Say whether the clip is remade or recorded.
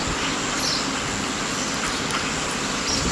recorded